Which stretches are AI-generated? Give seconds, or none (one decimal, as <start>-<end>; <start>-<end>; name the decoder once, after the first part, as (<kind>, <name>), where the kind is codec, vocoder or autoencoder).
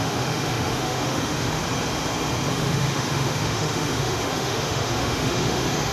0.0-1.6 (autoencoder, DAC-VAE); 2.5-5.9